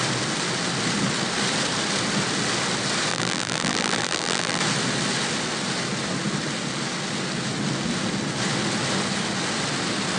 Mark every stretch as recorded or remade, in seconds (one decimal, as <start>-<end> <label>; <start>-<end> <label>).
0.0-3.1 recorded; 3.1-4.6 remade; 4.6-10.2 recorded